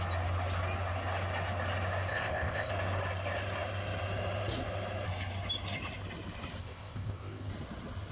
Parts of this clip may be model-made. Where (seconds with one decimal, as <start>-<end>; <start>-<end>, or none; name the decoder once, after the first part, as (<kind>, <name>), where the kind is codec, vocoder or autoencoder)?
2.1-2.7 (codec, ZipCodec); 6.6-7.5